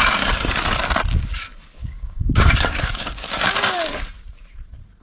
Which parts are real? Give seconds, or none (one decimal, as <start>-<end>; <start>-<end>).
0.0-1.8; 3.5-5.0